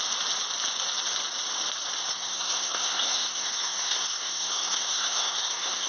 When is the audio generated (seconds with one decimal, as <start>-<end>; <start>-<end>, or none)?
2.1-5.9